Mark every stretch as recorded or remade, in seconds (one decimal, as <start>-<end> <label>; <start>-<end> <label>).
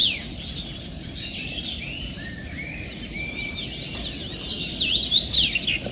0.0-4.3 recorded; 4.3-4.9 remade; 4.9-5.9 recorded